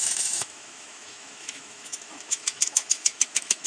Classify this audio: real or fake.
fake